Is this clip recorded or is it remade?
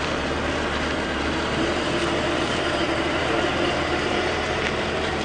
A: remade